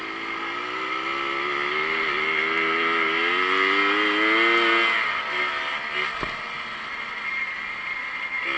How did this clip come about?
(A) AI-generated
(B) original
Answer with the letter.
B